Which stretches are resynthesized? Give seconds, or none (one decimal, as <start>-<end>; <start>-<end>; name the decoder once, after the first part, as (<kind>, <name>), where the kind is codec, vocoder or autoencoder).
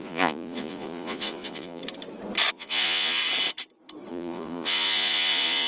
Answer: 0.0-1.8 (vocoder, Vocos); 2.5-3.2; 4.1-5.7